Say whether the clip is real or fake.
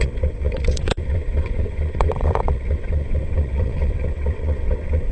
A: fake